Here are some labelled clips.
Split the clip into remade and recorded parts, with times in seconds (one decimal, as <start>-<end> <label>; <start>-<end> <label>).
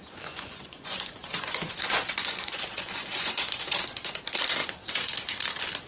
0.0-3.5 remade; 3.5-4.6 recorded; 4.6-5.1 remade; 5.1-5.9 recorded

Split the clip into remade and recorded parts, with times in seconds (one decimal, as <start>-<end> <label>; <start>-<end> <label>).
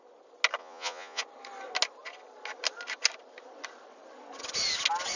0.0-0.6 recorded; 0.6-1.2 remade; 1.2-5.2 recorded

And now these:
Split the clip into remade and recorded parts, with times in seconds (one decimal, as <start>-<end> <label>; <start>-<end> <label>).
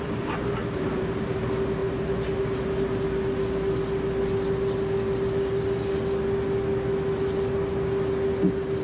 0.0-8.8 recorded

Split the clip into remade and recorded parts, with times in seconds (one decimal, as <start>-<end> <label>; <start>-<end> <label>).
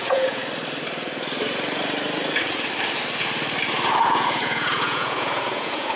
0.0-0.4 remade; 0.4-4.0 recorded; 4.0-6.0 remade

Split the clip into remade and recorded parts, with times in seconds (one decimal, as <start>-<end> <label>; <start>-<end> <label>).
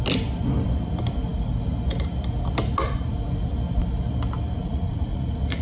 0.0-4.6 recorded; 4.6-5.6 remade